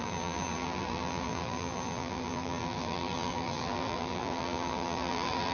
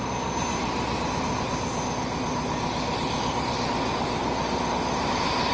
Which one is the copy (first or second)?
first